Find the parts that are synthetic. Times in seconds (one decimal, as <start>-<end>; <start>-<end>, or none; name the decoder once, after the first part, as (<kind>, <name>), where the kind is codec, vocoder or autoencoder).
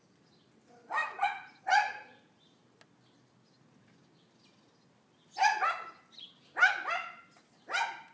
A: 1.0-1.6 (vocoder, Vocos)